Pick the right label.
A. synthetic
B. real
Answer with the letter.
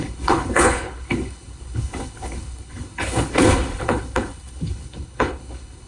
A